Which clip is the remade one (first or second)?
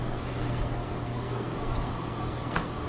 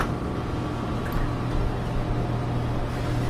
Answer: first